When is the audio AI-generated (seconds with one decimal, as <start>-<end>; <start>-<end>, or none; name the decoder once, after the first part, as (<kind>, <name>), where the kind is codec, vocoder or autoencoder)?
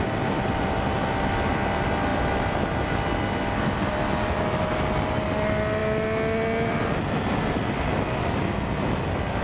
none